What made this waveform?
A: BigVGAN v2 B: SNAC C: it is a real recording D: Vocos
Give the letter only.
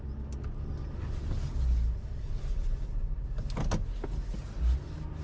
C